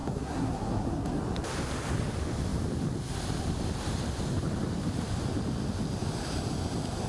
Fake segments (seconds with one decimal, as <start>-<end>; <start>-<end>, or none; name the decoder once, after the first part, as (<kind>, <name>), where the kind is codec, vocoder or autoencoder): 0.0-1.2 (codec, SNAC)